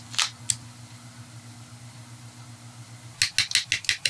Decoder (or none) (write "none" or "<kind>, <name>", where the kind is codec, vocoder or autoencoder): none